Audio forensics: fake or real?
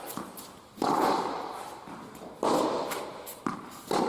fake